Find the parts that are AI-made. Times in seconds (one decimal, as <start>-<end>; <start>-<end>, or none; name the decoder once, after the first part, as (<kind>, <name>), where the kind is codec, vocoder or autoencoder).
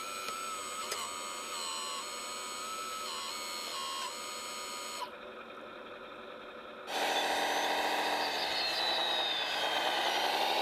none